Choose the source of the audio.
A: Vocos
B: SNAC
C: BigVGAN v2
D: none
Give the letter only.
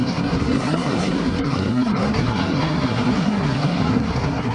B